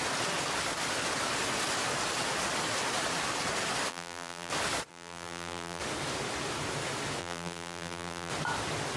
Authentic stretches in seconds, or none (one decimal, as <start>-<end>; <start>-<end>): 0.0-3.9; 4.5-4.9; 5.8-7.2; 8.3-9.0